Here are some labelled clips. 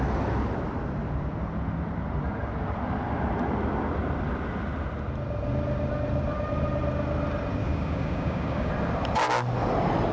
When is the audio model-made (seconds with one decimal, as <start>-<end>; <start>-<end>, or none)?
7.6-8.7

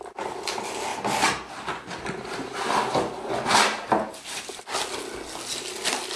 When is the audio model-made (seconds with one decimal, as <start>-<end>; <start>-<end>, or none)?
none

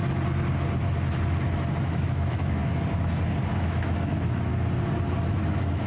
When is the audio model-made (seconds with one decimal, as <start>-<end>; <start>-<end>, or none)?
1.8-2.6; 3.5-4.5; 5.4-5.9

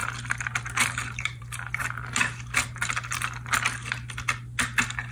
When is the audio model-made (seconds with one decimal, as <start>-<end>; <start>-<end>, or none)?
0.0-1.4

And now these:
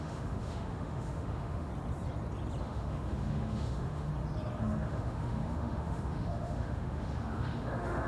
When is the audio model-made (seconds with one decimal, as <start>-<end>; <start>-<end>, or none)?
0.0-1.7; 2.6-4.1; 4.6-8.1

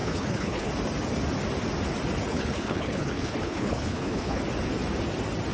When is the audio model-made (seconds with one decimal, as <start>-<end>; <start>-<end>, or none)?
0.0-0.7; 2.3-4.4